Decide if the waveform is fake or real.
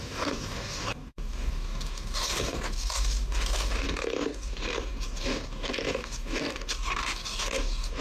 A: fake